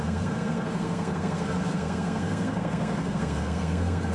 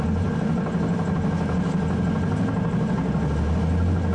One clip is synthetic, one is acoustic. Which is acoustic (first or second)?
second